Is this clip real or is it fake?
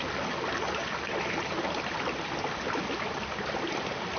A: real